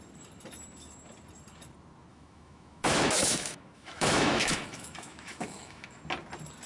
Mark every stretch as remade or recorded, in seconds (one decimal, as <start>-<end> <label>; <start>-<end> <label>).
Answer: 0.0-2.1 recorded; 2.1-6.0 remade; 6.0-6.7 recorded